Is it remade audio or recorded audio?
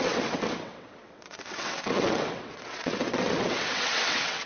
remade